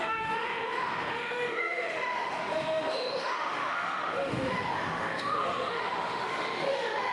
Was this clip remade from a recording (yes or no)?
yes